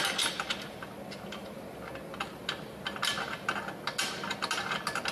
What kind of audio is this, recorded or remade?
recorded